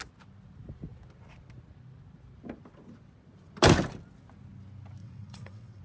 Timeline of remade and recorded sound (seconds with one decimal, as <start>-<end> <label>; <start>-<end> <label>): 0.0-5.0 recorded; 5.0-5.8 remade